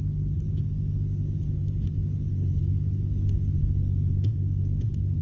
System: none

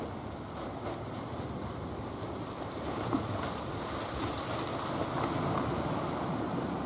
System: none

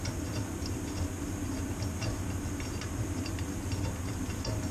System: none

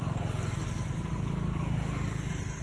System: none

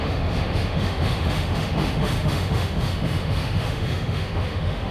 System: autoencoder, DAC-VAE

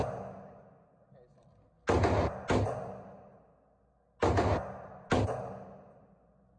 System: none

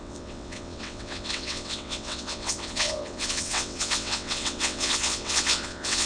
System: vocoder, WaveNeXt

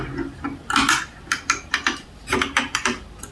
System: vocoder, BigVGAN v2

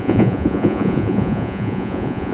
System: vocoder, Vocos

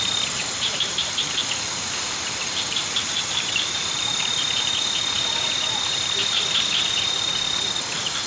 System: vocoder, BigVGAN v2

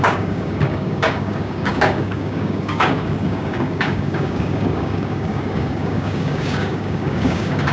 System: codec, DAC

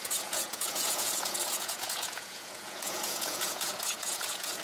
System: vocoder, Vocos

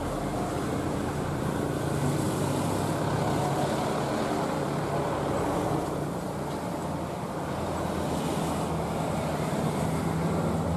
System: none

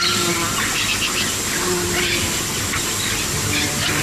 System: none